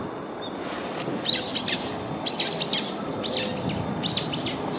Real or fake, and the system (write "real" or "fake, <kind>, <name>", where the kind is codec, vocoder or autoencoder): real